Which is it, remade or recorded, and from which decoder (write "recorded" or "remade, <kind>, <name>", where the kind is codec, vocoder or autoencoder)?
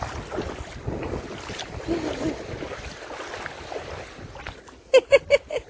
recorded